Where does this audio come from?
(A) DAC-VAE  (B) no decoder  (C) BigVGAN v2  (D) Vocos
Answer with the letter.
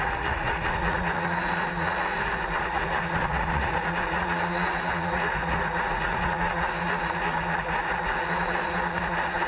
D